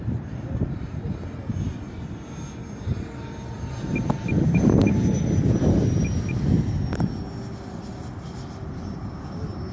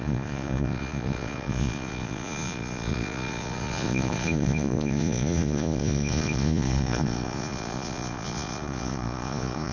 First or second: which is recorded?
first